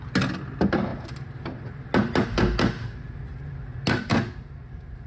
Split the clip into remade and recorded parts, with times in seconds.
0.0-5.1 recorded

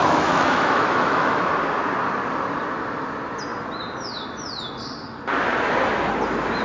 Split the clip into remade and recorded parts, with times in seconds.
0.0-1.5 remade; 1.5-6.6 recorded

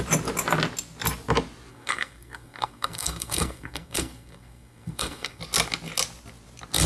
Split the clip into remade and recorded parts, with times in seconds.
0.0-1.7 recorded; 1.7-5.4 remade; 5.4-6.9 recorded